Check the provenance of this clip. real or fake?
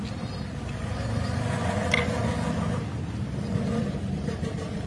real